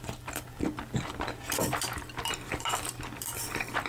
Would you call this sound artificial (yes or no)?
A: yes